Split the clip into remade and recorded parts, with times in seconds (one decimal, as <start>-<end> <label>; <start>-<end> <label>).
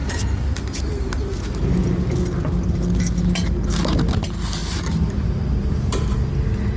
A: 0.0-6.8 recorded